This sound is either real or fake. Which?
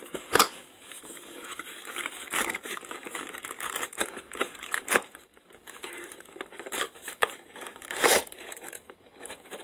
fake